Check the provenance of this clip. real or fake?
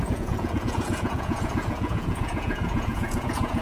fake